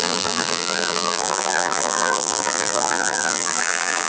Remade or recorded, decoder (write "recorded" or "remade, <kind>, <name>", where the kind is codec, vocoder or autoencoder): remade, vocoder, BigVGAN v2